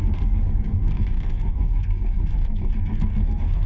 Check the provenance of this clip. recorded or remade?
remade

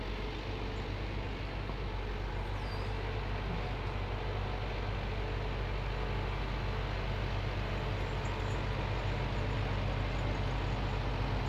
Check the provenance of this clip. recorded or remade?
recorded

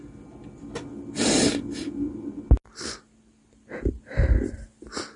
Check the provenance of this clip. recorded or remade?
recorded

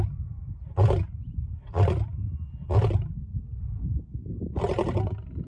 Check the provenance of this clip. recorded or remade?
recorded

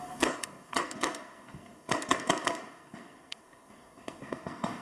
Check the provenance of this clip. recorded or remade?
remade